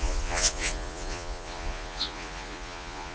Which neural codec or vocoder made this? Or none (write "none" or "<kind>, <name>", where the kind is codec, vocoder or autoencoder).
vocoder, Vocos